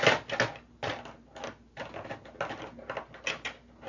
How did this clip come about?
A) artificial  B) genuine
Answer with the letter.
B